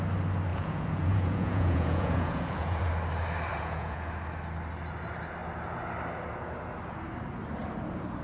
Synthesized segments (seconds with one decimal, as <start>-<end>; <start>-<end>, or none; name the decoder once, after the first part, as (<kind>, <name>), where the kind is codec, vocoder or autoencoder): 0.5-2.9 (vocoder, Vocos); 3.5-4.1